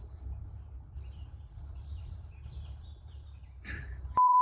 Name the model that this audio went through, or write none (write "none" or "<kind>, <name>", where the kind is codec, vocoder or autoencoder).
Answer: vocoder, BigVGAN v2